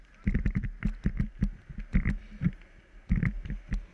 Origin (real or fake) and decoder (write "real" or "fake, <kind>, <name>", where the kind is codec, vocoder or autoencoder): real